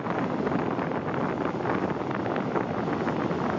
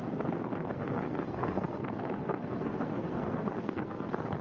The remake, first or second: second